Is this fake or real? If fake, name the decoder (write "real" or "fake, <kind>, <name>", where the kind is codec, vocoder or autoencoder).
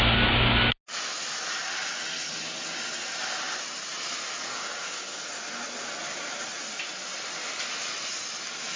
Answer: real